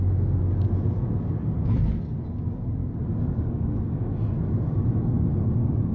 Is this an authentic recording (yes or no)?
yes